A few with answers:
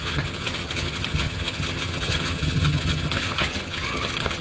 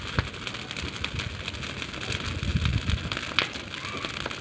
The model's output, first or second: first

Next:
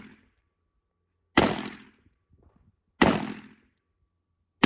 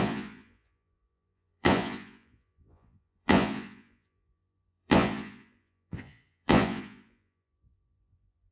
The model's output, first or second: second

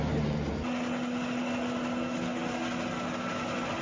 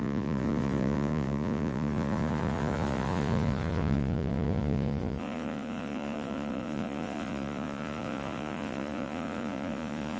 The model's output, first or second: second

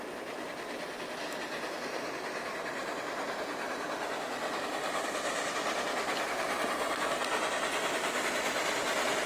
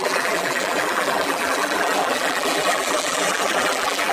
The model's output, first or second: second